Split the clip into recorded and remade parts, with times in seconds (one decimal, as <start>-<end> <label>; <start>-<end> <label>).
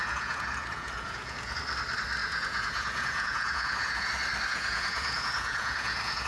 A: 0.0-1.6 remade; 1.6-2.2 recorded; 2.2-4.1 remade; 4.1-4.5 recorded; 4.5-6.3 remade